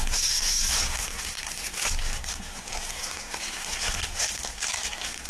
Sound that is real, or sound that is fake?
fake